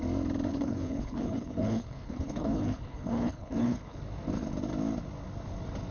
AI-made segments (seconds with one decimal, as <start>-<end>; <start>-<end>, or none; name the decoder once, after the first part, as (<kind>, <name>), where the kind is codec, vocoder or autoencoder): 0.5-4.0 (codec, HILCodec)